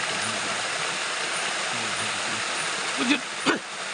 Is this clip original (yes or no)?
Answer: yes